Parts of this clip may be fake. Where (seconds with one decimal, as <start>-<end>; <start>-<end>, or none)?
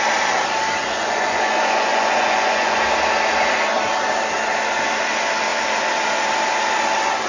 0.8-2.8